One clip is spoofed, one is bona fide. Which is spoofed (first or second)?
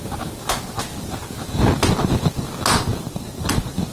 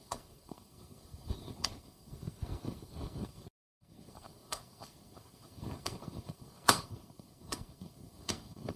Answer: second